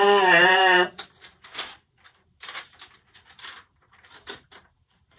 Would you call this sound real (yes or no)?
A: no